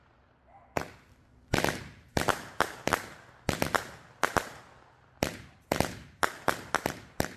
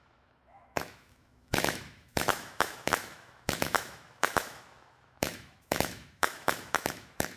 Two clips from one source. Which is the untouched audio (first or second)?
first